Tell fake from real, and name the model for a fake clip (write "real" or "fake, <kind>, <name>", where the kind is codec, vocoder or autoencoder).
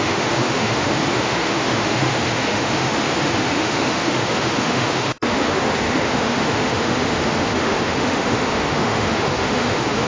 fake, autoencoder, DAC-VAE